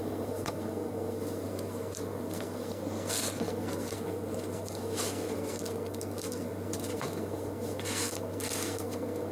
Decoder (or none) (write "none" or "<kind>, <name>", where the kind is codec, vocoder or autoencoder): codec, SNAC